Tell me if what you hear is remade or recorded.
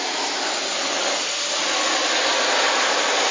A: recorded